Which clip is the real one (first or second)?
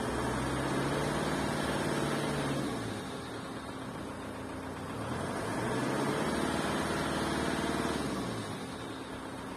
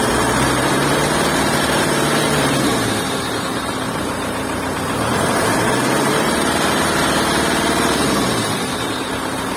first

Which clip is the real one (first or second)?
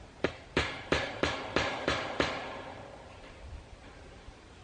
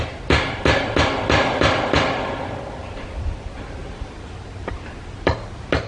second